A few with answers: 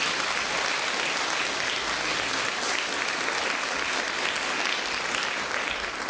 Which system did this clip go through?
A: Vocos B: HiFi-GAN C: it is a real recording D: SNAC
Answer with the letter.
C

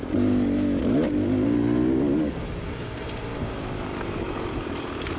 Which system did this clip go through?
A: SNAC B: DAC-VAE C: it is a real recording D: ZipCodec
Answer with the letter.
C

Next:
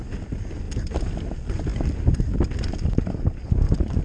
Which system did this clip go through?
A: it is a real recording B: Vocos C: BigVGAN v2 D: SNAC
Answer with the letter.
A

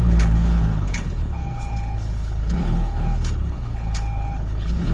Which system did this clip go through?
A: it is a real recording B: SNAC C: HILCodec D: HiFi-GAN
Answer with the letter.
C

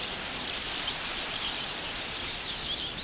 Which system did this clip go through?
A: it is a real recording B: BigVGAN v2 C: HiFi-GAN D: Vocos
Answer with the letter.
A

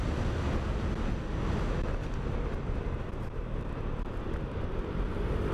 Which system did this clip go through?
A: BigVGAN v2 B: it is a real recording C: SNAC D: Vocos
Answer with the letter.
B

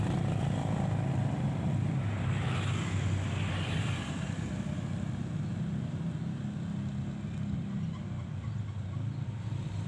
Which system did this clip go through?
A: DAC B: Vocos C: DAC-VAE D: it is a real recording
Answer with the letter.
D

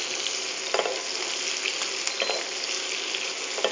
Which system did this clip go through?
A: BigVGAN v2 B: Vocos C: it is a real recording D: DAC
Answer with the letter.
C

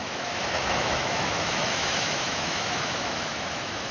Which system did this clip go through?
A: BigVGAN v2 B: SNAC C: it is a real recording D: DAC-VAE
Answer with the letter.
D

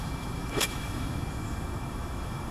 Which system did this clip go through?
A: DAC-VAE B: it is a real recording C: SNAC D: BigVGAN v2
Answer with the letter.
A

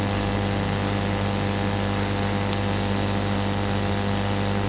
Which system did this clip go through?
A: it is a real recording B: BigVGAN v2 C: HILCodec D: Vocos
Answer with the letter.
A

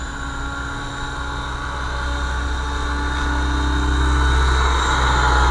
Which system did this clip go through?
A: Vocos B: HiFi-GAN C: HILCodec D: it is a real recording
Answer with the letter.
D